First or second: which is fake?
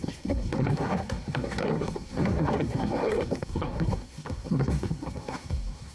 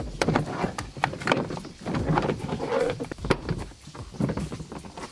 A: first